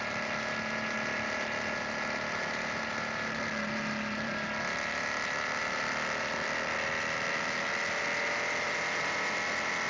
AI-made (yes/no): no